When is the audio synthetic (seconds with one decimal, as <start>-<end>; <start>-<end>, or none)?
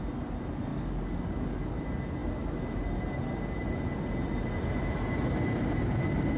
0.7-1.8